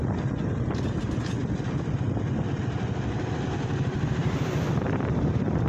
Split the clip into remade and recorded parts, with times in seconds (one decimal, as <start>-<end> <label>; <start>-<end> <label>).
0.0-1.4 remade; 1.4-3.6 recorded; 3.6-5.7 remade